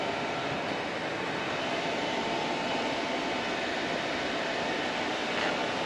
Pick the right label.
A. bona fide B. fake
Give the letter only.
A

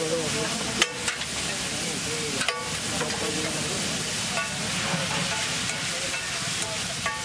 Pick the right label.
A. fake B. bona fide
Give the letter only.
B